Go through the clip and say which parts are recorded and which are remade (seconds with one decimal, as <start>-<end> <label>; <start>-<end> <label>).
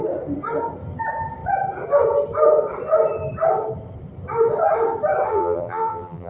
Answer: 0.0-5.3 recorded; 5.3-6.3 remade